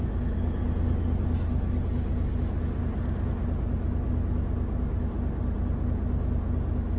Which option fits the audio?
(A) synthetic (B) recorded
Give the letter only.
B